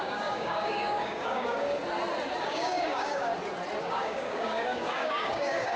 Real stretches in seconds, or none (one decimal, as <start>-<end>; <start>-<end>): 1.8-2.4; 3.3-3.8